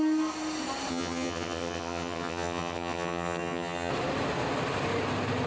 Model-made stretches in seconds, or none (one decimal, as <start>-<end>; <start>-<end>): 0.9-3.9